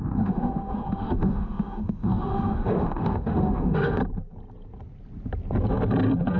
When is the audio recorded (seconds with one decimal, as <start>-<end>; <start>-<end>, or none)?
4.0-6.4